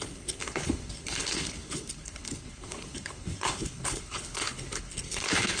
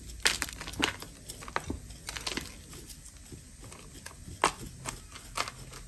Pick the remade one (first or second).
first